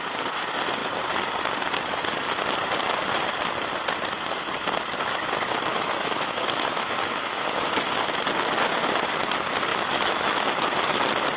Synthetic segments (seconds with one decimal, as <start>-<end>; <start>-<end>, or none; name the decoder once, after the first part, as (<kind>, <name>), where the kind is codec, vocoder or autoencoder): 5.7-7.7 (autoencoder, DAC-VAE); 9.7-11.0